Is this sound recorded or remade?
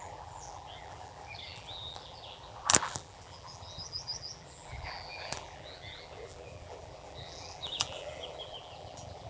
remade